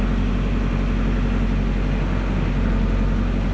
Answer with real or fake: real